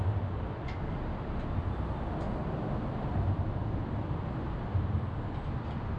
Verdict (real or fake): real